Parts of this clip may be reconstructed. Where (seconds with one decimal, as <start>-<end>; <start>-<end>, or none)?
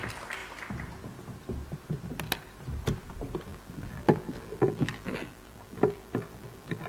3.5-6.9